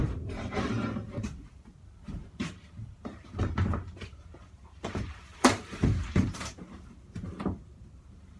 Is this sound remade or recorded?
remade